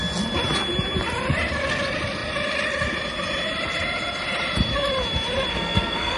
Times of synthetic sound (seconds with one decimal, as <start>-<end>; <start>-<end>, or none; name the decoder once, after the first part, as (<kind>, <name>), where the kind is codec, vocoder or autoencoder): 5.5-6.2 (codec, SNAC)